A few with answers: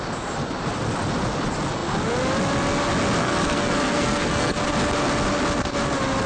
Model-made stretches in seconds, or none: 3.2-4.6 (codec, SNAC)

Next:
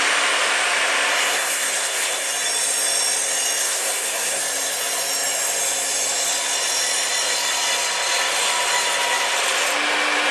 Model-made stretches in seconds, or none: 1.1-2.3 (codec, SNAC); 3.6-4.4

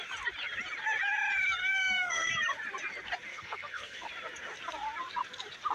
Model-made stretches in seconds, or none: 1.6-2.3 (codec, SNAC); 3.3-4.1

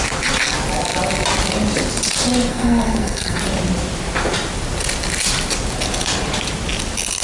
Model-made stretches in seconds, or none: 2.5-3.4 (codec, SNAC)

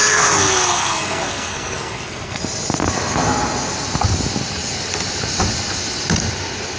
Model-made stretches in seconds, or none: 0.0-2.4 (codec, SNAC)

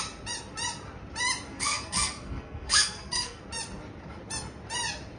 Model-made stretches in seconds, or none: 1.5-3.4 (codec, SNAC)